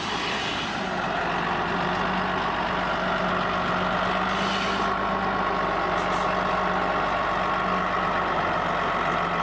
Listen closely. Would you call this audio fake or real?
real